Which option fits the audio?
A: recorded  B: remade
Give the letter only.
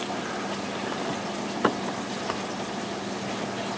A